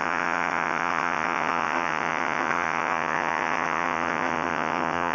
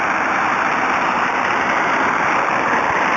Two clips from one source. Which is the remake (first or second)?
first